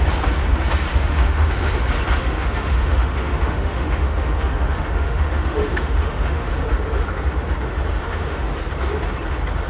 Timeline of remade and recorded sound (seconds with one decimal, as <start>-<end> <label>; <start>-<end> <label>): 0.0-0.9 recorded; 0.9-1.7 remade; 1.7-2.2 recorded; 2.2-6.5 remade; 6.5-8.0 recorded; 8.0-8.6 remade; 8.6-9.7 recorded